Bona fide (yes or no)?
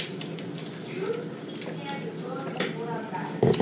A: yes